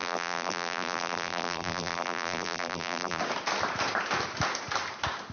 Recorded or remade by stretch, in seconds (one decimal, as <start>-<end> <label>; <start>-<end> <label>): 0.0-3.2 remade; 3.2-5.3 recorded

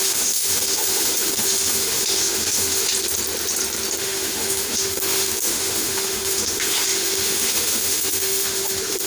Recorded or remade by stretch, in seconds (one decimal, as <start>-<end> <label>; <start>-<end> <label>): 0.0-2.9 remade; 2.9-4.0 recorded; 4.0-9.1 remade

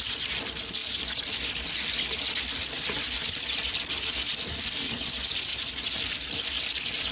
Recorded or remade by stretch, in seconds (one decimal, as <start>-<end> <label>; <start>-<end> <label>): 0.0-7.1 recorded

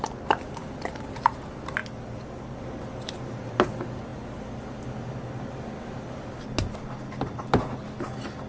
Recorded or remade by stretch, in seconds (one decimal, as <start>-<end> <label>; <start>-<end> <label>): 0.0-8.5 recorded

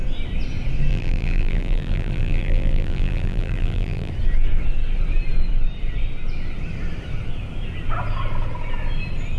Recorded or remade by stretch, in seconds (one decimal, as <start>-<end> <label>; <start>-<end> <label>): 0.0-0.9 recorded; 0.9-4.1 remade; 4.1-9.4 recorded